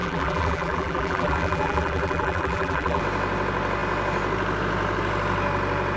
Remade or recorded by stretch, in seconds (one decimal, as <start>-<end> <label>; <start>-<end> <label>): 0.0-3.0 remade; 3.0-6.0 recorded